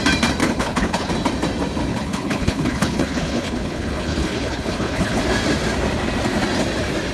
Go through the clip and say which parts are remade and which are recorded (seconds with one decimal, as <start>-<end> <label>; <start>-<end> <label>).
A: 0.0-0.4 recorded; 0.4-1.1 remade; 1.1-1.9 recorded; 1.9-5.2 remade; 5.2-7.1 recorded